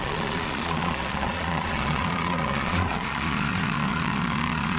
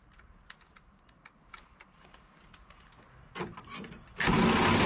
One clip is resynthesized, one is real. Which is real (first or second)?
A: second